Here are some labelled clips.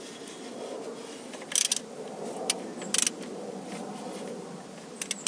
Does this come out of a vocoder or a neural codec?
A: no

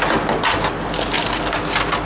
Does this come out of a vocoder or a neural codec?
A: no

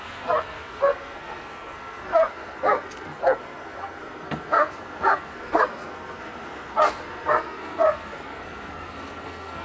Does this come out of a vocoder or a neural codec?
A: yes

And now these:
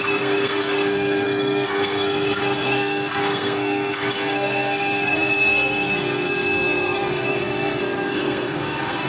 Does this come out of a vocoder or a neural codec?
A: yes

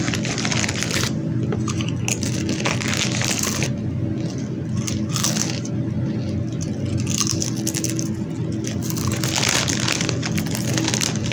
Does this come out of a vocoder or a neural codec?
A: no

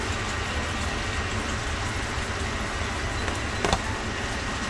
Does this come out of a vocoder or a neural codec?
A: no